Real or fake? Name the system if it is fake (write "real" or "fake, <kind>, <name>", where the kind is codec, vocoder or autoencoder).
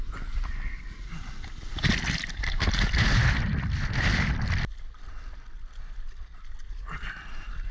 real